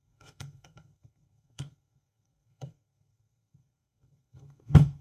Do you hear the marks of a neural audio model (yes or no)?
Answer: yes